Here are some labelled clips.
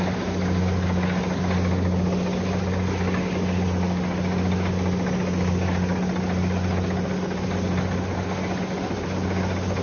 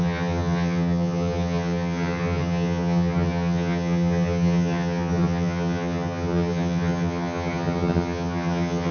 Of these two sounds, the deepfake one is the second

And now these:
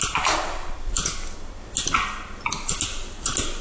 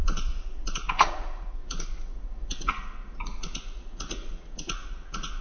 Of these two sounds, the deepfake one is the second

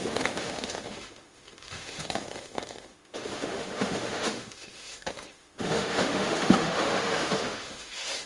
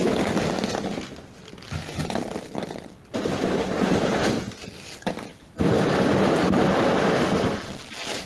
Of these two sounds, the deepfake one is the first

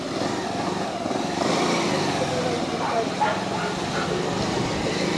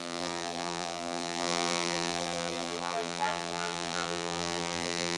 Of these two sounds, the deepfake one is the second